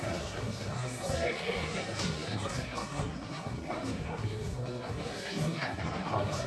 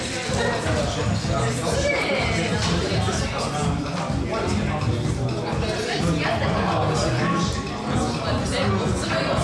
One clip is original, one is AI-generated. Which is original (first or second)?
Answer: second